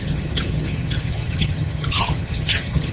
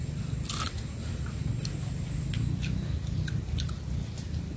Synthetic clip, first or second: first